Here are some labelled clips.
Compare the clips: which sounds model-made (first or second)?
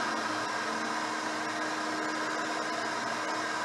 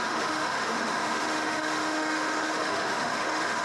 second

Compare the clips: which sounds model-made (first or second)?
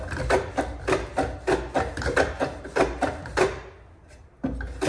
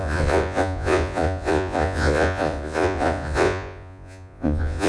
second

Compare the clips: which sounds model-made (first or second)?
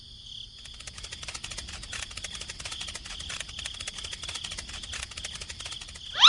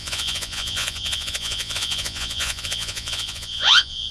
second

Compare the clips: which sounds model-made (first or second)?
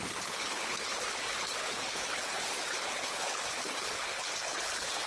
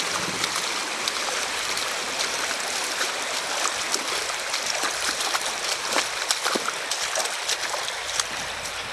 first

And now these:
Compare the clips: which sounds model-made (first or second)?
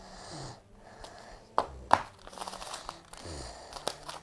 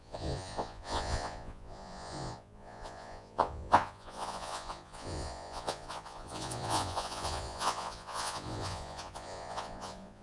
second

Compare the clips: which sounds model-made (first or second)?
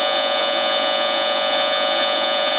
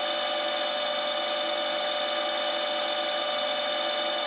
first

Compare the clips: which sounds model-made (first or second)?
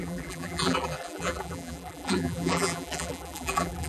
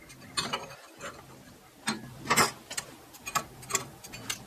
first